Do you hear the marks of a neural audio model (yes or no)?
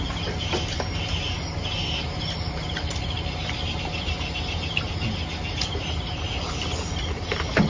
no